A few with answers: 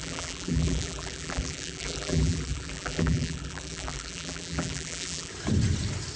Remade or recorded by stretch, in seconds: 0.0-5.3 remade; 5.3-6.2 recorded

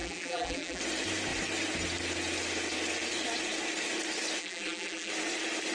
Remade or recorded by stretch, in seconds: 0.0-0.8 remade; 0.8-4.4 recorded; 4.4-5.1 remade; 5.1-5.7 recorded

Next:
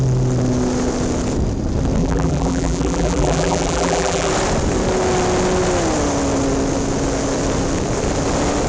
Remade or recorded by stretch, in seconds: 0.0-2.0 recorded; 2.0-4.3 remade; 4.3-8.7 recorded

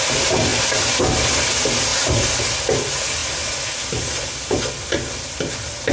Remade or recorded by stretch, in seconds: 0.0-1.9 recorded; 1.9-2.4 remade; 2.4-5.9 recorded

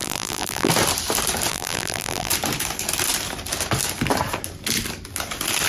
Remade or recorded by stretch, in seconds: 0.0-0.7 remade; 0.7-1.5 recorded; 1.5-2.3 remade; 2.3-5.7 recorded